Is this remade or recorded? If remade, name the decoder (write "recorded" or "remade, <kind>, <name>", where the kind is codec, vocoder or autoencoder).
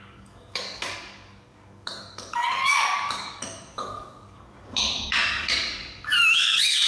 remade, codec, DAC